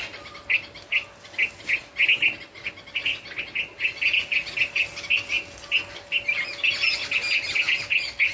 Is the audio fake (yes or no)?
no